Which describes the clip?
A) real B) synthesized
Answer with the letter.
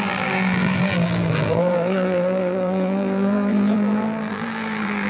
B